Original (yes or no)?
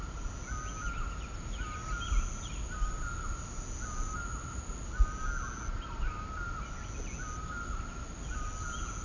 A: yes